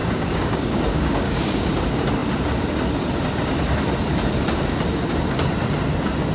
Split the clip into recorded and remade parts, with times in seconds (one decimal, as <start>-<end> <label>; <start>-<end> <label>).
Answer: 0.0-1.7 remade; 1.7-6.3 recorded